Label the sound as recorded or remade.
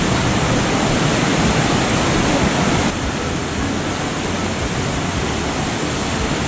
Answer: recorded